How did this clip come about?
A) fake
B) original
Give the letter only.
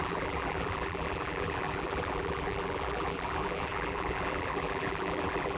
A